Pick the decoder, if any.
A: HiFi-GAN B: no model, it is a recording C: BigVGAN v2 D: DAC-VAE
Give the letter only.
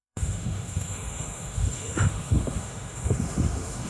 D